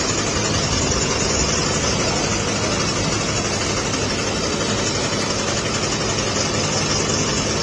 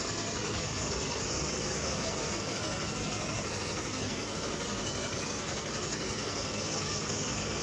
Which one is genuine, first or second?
first